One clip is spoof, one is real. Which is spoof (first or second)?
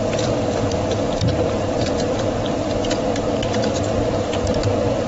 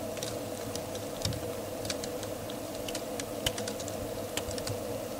first